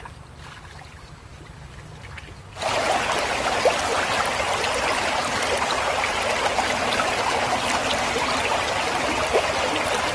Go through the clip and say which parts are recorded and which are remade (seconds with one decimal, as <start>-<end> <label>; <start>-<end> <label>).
0.0-10.1 recorded